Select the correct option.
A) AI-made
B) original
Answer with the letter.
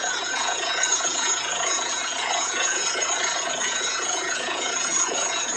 A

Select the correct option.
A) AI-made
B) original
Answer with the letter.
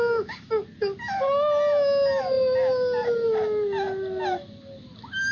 B